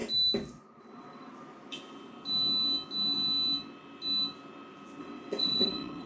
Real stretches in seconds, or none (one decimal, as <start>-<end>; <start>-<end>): 0.0-0.8; 1.3-5.0